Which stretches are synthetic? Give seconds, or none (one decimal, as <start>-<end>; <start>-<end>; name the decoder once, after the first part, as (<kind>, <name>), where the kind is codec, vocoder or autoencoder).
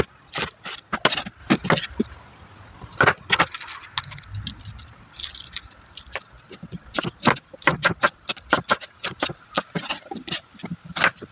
none